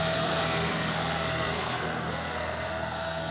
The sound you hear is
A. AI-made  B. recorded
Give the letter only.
A